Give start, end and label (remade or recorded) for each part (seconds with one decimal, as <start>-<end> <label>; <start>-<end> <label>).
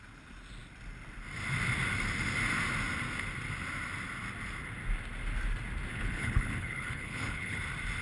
0.0-5.9 recorded; 5.9-7.6 remade; 7.6-8.0 recorded